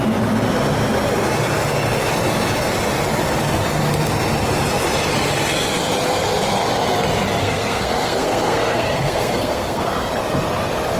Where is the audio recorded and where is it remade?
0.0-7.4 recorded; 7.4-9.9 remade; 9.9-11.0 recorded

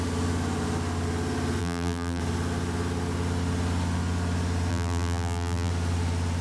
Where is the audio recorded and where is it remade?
0.0-1.6 recorded; 1.6-2.2 remade; 2.2-4.7 recorded; 4.7-5.7 remade; 5.7-6.4 recorded

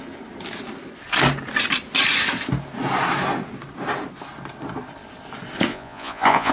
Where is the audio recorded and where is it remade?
0.0-5.7 recorded; 5.7-6.5 remade

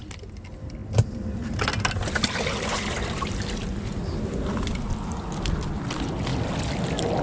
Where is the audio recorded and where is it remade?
0.0-7.2 recorded